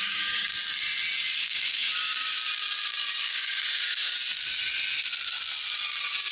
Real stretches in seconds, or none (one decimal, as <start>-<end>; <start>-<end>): 0.5-1.4; 2.4-3.2; 4.1-6.3